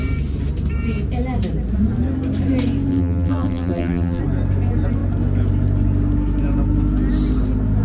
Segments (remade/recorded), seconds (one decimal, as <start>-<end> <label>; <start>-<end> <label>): 0.0-2.9 recorded; 2.9-4.2 remade; 4.2-7.8 recorded